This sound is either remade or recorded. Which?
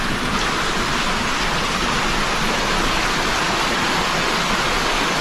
recorded